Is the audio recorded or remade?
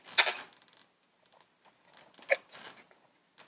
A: recorded